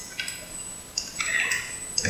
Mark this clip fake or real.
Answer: real